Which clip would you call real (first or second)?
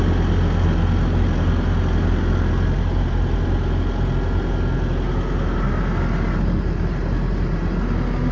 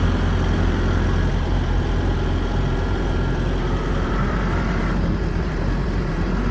first